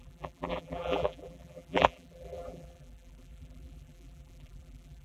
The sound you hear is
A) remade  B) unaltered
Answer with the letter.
A